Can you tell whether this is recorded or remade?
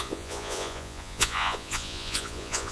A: remade